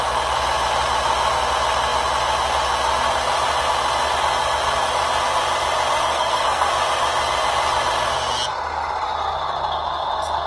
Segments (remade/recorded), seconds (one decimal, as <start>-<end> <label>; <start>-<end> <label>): 0.0-6.0 recorded; 6.0-6.7 remade; 6.7-10.5 recorded